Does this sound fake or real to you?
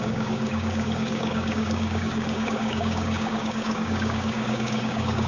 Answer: fake